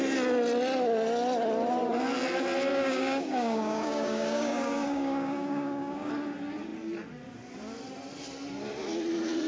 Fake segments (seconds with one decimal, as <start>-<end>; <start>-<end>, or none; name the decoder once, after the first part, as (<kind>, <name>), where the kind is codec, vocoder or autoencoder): 2.7-6.1 (codec, DAC)